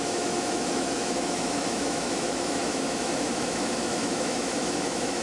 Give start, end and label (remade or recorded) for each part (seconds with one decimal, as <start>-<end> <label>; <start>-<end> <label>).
0.0-5.2 remade